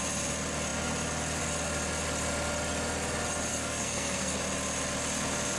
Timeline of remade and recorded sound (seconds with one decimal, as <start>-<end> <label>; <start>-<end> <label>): 0.0-3.5 recorded; 3.5-4.4 remade; 4.4-5.6 recorded